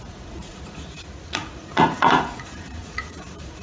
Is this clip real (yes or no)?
no